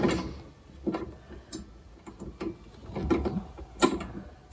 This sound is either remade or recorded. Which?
recorded